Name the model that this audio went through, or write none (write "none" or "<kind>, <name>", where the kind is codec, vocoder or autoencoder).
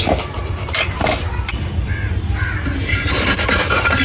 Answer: none